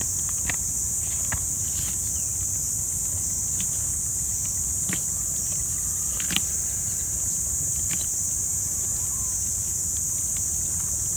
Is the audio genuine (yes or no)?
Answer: yes